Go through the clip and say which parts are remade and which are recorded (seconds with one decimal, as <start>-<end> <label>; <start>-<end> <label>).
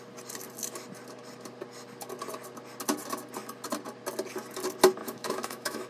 0.0-5.0 recorded; 5.0-5.9 remade